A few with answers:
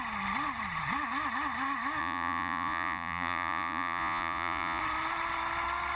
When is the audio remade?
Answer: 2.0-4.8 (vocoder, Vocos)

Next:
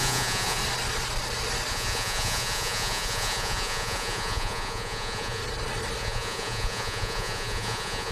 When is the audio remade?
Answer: 0.0-0.6 (vocoder, Vocos); 1.7-5.4; 6.0-8.1

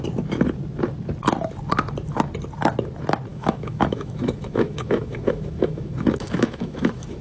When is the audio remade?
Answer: 3.3-7.2 (autoencoder, DAC-VAE)

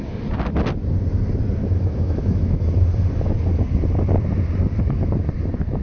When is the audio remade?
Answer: 1.6-2.6 (autoencoder, DAC-VAE)

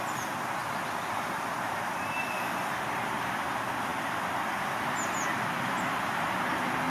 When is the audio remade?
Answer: 5.3-6.3 (vocoder, BigVGAN v2)

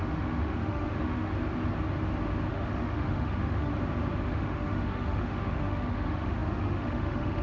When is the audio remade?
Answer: 0.0-1.3 (autoencoder, DAC-VAE); 2.5-3.7; 4.3-7.4

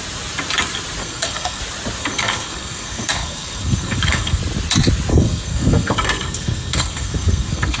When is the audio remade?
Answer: 1.0-1.6 (codec, SNAC); 2.0-4.4; 5.1-7.8